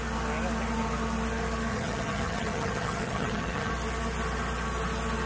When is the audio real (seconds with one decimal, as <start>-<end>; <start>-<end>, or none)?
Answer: 0.0-1.7; 3.7-5.3